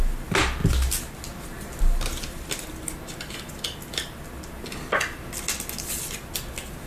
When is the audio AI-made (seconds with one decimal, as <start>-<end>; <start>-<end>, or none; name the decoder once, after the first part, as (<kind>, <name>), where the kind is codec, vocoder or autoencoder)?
none